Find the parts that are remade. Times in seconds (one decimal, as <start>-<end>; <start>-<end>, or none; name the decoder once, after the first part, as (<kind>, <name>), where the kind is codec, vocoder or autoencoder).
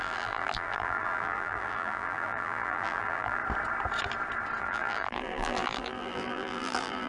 0.0-3.4 (vocoder, BigVGAN v2); 4.6-7.1